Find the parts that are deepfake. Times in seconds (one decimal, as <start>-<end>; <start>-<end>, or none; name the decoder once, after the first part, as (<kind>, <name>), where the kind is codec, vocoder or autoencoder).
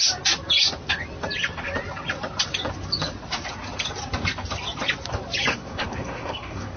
5.5-6.8 (codec, SNAC)